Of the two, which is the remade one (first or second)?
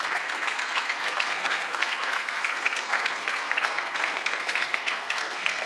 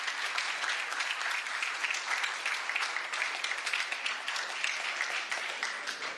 first